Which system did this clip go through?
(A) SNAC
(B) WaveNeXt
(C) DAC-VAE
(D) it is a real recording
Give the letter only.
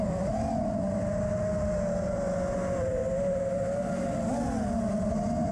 D